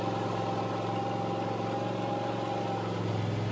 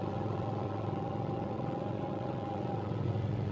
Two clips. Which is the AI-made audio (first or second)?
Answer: second